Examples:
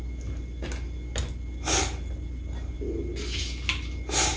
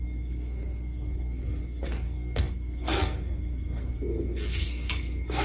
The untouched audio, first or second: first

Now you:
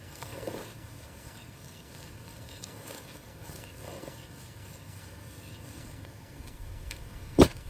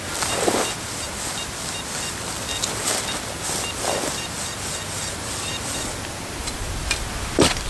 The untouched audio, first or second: second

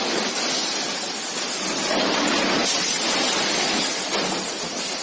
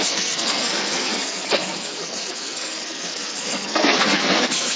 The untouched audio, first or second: first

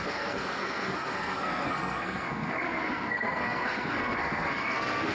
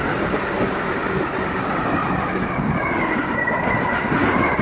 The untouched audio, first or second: second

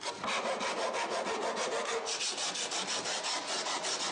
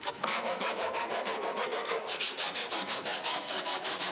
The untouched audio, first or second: first